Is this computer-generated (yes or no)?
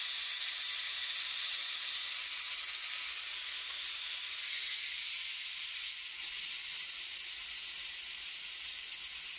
no